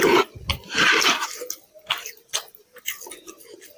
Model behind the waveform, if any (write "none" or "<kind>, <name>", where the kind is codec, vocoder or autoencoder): none